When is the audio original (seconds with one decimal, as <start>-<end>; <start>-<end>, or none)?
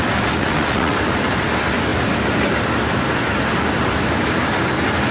0.0-0.4; 1.0-5.1